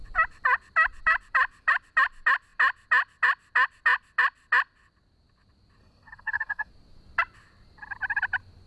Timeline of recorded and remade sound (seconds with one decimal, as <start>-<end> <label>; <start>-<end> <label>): 0.0-5.8 recorded; 5.8-6.7 remade; 6.7-8.7 recorded